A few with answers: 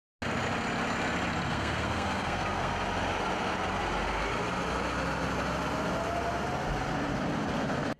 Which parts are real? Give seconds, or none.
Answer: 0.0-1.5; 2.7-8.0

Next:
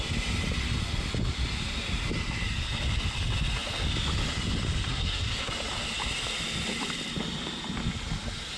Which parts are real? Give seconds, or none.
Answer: 0.0-4.9; 5.5-8.6

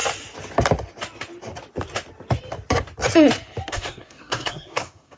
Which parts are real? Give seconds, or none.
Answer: 0.0-3.7